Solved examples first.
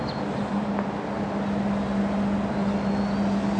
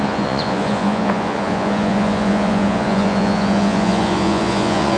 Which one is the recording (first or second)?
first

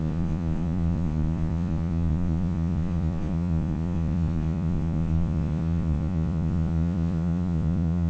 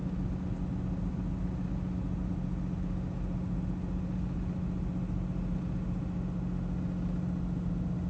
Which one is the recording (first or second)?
second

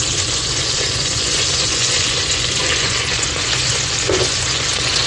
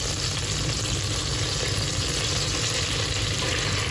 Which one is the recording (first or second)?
second